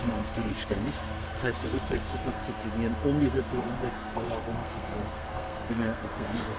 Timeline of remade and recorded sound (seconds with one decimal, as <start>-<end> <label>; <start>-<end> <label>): 0.0-2.4 remade; 2.4-3.2 recorded; 3.2-6.6 remade